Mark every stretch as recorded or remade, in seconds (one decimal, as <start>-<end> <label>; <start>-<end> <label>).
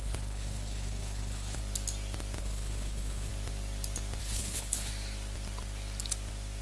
0.0-1.6 remade; 1.6-2.4 recorded; 2.4-3.3 remade; 3.3-4.2 recorded; 4.2-4.9 remade; 4.9-6.6 recorded